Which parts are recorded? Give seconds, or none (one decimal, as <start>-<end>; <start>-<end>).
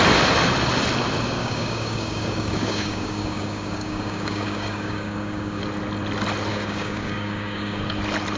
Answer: 0.0-1.4; 5.6-6.5; 7.8-8.4